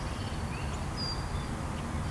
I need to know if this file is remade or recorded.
recorded